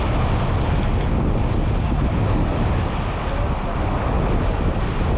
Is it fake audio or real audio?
real